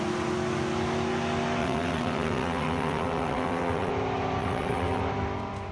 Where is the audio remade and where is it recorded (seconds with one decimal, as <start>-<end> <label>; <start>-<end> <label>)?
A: 0.0-1.6 recorded; 1.6-3.9 remade; 3.9-4.4 recorded; 4.4-5.0 remade; 5.0-5.7 recorded